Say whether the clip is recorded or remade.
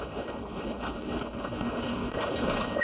remade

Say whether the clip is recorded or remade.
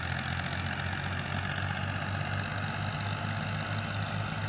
recorded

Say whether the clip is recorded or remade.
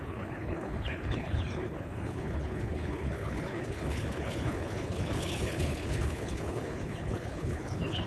remade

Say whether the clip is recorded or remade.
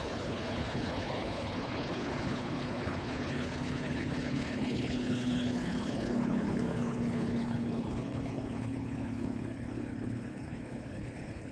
remade